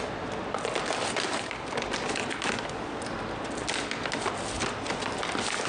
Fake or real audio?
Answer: real